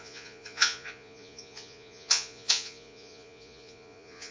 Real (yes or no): no